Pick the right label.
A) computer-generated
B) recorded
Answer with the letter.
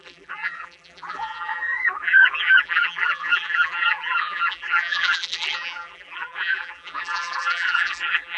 A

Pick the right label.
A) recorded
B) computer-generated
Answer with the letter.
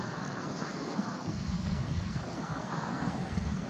B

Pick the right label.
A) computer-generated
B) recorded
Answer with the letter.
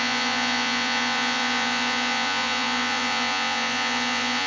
A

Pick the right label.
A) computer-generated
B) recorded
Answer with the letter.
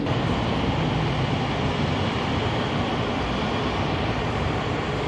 B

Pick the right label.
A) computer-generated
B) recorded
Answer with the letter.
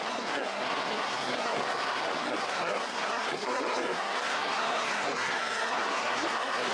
A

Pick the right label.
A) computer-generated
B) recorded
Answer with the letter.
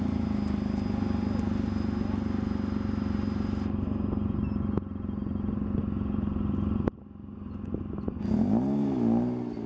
B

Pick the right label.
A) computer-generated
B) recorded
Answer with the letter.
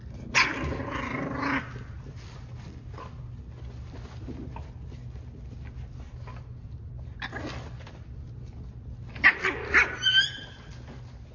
B